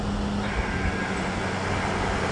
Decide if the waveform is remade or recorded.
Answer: recorded